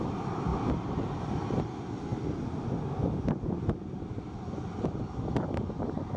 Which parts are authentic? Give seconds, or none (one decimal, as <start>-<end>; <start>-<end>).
0.0-6.2